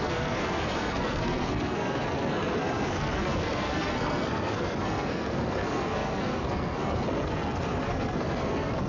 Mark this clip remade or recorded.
remade